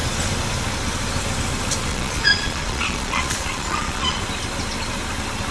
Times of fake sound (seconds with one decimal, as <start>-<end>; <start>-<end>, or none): 1.9-4.2